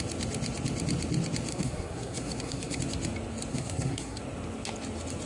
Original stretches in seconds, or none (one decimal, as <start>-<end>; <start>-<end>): 0.0-1.5; 2.8-3.5; 4.2-5.3